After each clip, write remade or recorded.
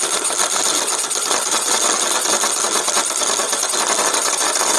recorded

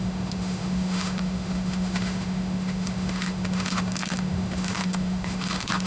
remade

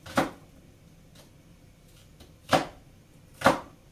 recorded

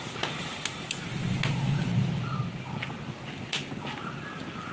recorded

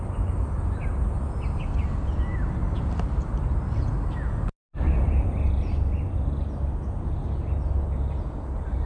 recorded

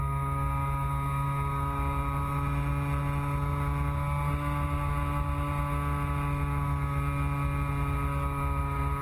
recorded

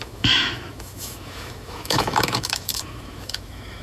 remade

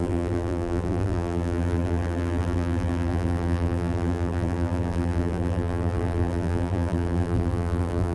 remade